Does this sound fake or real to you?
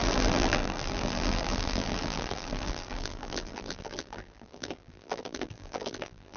fake